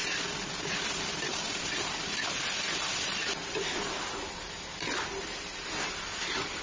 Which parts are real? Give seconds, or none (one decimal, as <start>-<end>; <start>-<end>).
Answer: 0.0-6.6